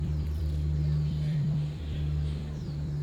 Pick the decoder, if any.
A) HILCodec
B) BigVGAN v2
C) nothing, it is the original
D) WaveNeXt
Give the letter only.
B